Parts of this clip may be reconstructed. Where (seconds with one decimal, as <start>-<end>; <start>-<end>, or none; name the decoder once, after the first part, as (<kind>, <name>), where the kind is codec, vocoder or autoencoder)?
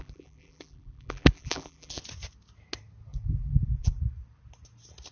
0.0-2.0 (vocoder, BigVGAN v2); 3.1-4.0